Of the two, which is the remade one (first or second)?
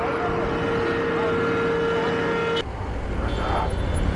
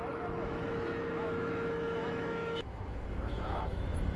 second